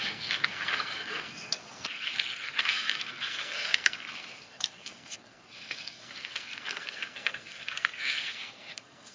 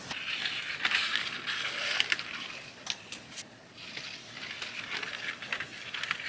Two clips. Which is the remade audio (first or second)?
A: first